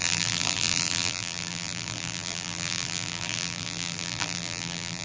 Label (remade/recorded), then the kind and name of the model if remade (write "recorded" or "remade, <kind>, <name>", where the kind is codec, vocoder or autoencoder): remade, vocoder, BigVGAN v2